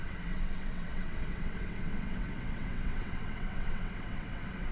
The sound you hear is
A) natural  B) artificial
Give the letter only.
B